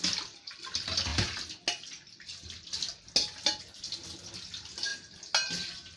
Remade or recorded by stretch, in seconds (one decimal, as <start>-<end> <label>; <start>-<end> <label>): 0.0-6.0 recorded